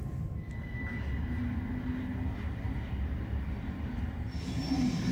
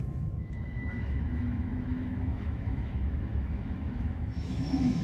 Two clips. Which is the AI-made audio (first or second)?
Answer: second